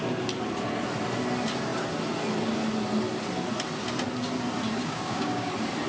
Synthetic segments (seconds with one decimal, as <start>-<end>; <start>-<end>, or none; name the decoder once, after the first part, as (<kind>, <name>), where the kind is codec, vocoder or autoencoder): 4.8-5.5 (codec, DAC)

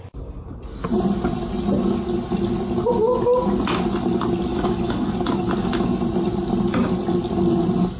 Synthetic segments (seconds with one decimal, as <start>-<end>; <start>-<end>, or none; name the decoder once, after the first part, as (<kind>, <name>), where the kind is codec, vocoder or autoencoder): 4.5-5.1 (autoencoder, DAC-VAE)

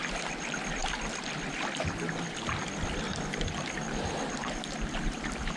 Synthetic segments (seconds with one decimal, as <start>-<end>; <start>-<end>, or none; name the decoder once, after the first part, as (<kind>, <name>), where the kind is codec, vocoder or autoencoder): none